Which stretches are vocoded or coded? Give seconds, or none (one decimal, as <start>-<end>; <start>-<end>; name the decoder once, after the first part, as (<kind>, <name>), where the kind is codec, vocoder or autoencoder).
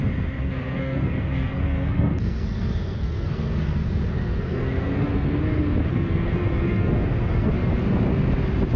0.4-5.4 (codec, SNAC); 5.9-7.5